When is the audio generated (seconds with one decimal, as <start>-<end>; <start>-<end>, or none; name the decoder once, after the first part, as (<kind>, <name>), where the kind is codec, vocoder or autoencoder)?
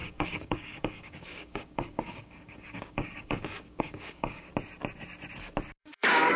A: 0.0-4.5 (codec, DAC); 5.8-6.4